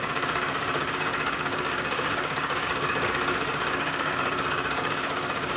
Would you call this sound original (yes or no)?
no